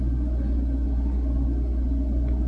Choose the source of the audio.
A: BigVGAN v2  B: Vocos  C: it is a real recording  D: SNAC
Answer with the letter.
C